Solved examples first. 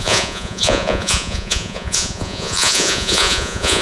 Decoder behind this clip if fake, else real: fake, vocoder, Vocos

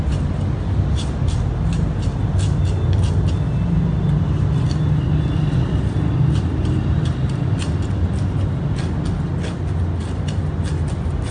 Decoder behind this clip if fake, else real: real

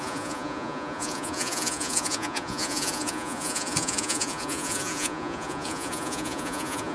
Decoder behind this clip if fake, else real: fake, vocoder, Vocos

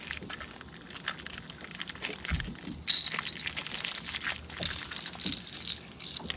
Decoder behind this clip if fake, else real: real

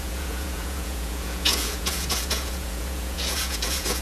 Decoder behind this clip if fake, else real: fake, vocoder, Vocos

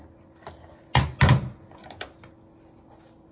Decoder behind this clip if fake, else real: real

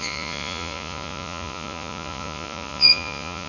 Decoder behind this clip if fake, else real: fake, vocoder, Vocos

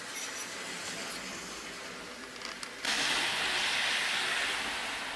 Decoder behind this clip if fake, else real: real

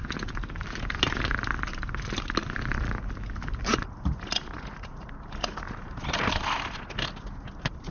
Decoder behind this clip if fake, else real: real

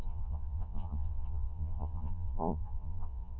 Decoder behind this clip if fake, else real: fake, vocoder, Vocos